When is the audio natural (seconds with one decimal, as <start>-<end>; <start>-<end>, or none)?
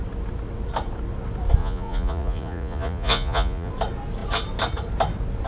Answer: 0.0-1.6; 3.7-5.5